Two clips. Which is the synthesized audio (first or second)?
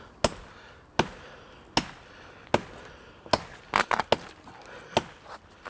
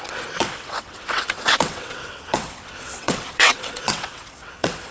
second